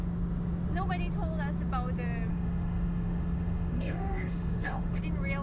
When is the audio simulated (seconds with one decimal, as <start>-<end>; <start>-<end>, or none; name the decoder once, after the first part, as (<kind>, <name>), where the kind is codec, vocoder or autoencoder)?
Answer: 2.3-5.0 (autoencoder, DAC-VAE)